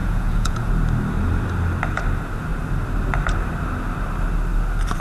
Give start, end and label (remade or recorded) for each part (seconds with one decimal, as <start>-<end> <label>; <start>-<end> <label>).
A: 0.0-0.7 remade; 0.7-5.0 recorded